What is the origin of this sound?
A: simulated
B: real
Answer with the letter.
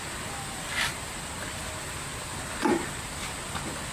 B